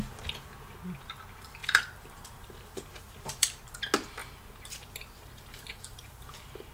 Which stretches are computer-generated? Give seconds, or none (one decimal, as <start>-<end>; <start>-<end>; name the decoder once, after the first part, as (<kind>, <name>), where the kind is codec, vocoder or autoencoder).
1.6-3.6 (vocoder, BigVGAN v2); 4.2-6.7